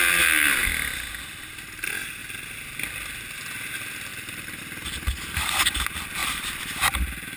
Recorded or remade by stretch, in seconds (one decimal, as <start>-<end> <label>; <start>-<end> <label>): 0.0-4.1 recorded; 4.1-4.6 remade; 4.6-6.2 recorded; 6.2-7.4 remade